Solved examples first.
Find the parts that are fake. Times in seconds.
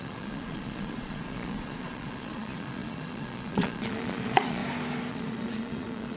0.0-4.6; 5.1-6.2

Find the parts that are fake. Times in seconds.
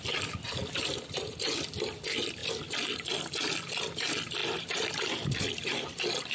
none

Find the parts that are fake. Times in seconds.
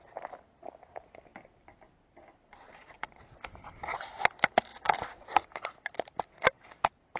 4.7-5.4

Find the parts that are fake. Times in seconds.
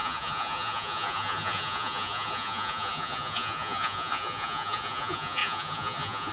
0.0-6.3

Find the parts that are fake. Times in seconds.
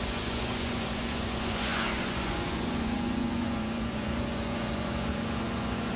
0.0-6.0